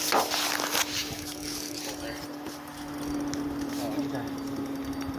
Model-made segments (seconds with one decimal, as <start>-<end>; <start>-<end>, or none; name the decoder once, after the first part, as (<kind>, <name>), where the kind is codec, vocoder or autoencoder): 1.0-1.8 (codec, DAC)